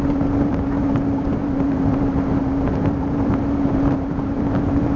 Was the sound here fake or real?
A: fake